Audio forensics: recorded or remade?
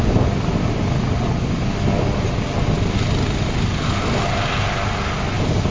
recorded